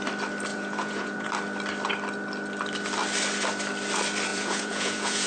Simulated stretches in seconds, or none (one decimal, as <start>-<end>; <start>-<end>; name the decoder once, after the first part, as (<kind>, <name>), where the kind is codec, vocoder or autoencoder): 0.5-1.3 (vocoder, Vocos); 4.3-5.3